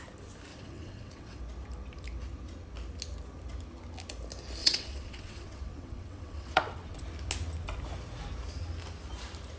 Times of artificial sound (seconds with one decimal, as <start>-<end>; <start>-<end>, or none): 0.5-1.4; 4.6-7.0